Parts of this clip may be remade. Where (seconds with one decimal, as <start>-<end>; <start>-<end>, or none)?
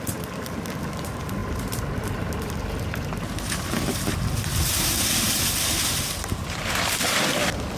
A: none